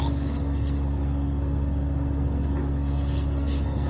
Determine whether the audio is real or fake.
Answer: fake